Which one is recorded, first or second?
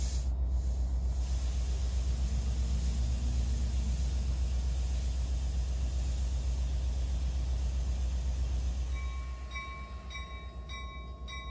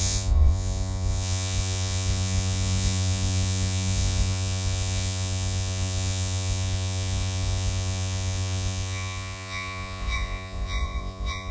first